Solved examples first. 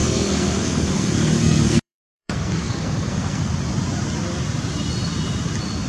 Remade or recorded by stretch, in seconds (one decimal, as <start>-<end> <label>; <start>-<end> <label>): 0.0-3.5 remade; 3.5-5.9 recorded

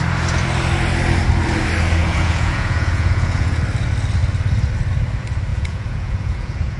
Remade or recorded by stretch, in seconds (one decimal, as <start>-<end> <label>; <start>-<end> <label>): 0.0-2.0 recorded; 2.0-3.6 remade; 3.6-5.5 recorded; 5.5-6.8 remade

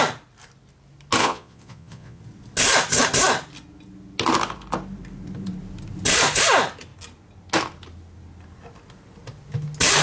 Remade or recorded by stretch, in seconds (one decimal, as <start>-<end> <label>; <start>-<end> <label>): 0.0-1.2 recorded; 1.2-2.2 remade; 2.2-10.0 recorded

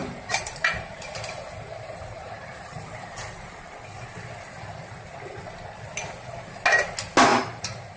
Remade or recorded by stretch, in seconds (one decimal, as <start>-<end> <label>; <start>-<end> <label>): 0.0-3.5 remade; 3.5-7.3 recorded; 7.3-8.0 remade

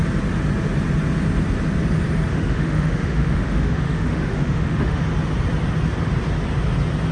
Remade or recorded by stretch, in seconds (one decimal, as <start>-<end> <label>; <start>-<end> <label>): 0.0-2.3 recorded; 2.3-5.0 remade; 5.0-7.1 recorded